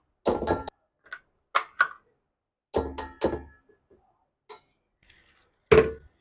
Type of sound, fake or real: real